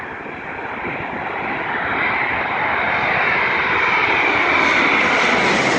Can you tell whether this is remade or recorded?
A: recorded